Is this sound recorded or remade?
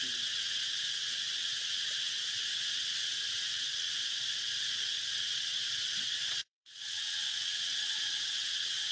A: remade